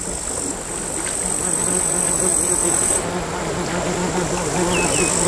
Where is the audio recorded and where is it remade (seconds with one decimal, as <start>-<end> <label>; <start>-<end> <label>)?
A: 0.0-5.3 recorded